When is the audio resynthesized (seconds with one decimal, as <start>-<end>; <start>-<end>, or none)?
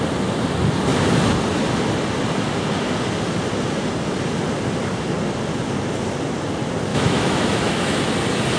6.9-8.0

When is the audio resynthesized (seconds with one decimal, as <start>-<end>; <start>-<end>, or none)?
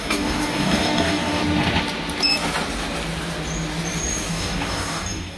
0.0-1.4; 4.3-5.4